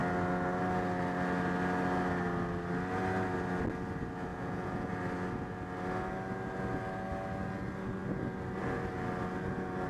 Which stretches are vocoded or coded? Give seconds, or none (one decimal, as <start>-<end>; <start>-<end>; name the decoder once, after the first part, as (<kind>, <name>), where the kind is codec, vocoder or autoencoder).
4.3-4.9 (vocoder, Vocos)